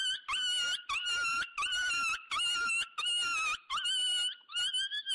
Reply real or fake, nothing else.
real